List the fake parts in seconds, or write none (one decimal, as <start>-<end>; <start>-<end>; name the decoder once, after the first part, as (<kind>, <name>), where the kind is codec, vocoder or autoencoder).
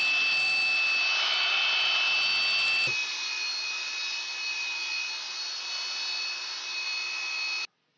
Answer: none